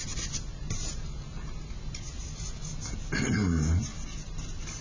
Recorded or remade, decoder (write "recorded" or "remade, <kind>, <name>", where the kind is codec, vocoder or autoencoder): remade, vocoder, BigVGAN v2